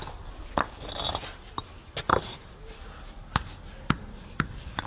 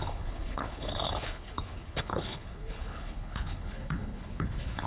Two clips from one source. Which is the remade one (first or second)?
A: second